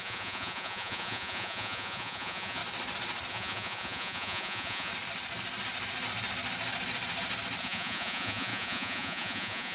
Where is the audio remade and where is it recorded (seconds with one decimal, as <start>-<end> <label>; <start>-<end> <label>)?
0.0-2.6 remade; 2.6-3.3 recorded; 3.3-4.9 remade; 4.9-7.6 recorded; 7.6-9.7 remade